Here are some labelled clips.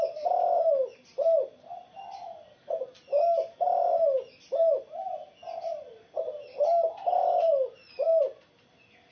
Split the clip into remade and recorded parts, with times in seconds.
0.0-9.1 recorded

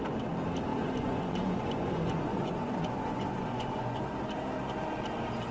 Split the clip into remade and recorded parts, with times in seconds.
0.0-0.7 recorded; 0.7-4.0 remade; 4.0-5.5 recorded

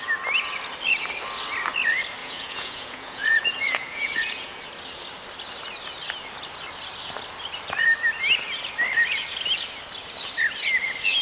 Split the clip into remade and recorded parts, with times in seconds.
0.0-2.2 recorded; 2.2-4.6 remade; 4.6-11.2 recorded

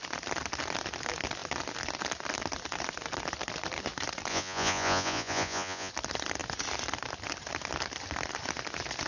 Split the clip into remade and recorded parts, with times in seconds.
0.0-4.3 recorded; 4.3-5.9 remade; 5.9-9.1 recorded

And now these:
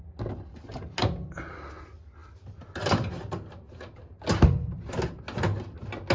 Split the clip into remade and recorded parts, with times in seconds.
0.0-6.1 recorded